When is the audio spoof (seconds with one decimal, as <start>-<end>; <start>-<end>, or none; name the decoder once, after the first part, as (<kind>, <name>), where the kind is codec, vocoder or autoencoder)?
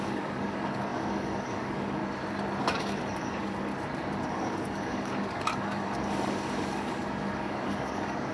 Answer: 0.0-2.0 (codec, DAC); 2.6-3.7; 4.3-8.3